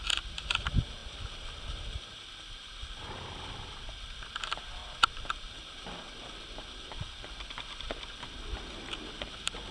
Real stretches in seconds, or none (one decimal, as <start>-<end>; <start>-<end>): 0.0-9.7